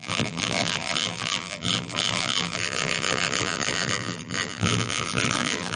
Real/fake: fake